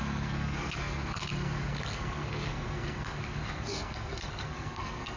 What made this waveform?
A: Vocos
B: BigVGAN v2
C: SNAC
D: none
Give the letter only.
C